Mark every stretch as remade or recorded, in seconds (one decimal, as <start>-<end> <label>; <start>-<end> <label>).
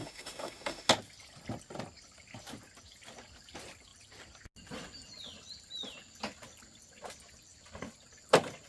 0.0-0.9 remade; 0.9-8.7 recorded